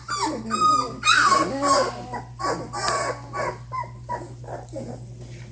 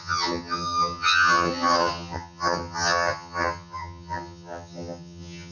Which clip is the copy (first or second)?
second